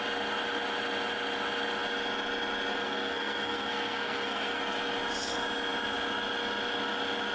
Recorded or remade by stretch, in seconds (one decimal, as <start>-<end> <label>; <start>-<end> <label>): 0.0-2.7 recorded; 2.7-4.6 remade; 4.6-7.3 recorded